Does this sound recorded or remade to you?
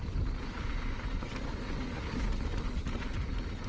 recorded